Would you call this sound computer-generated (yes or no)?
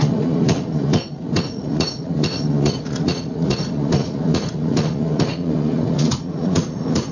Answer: yes